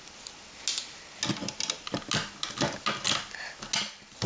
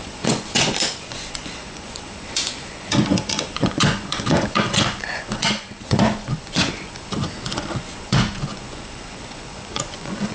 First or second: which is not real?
second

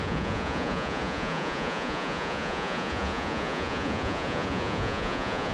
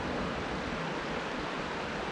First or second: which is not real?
first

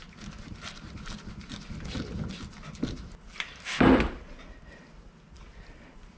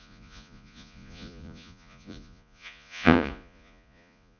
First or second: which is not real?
second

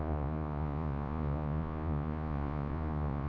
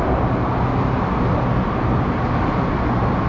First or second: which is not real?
first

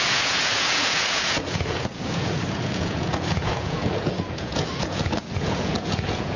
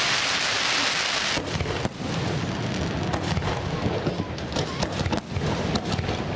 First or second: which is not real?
first